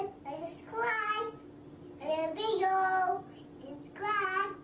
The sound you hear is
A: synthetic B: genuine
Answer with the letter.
B